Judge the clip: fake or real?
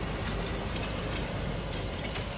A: fake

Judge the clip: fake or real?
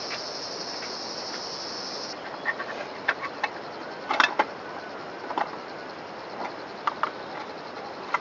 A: real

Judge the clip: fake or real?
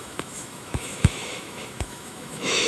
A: fake